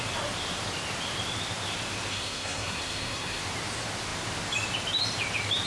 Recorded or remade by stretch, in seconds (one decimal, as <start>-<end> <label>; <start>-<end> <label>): 0.0-2.1 recorded; 2.1-3.4 remade; 3.4-5.7 recorded

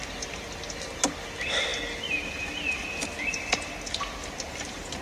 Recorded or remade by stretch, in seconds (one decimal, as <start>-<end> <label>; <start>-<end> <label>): 0.0-5.0 recorded

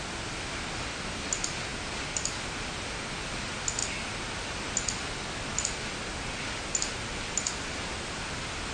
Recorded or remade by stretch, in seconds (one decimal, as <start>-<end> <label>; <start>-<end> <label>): 0.0-8.7 recorded

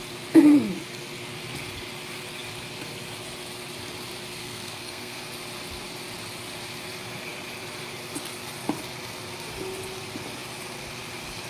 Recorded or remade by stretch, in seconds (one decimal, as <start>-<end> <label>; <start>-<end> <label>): 0.0-4.4 recorded; 4.4-5.2 remade; 5.2-11.5 recorded

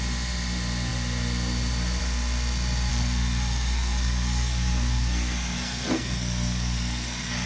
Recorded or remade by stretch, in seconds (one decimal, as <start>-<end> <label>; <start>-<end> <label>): 0.0-2.9 recorded; 2.9-7.5 remade